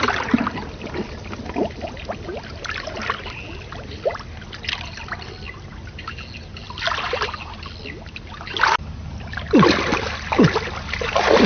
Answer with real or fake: real